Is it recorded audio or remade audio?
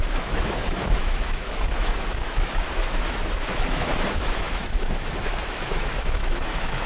remade